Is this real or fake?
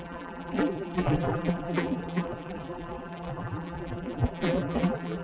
fake